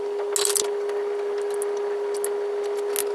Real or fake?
real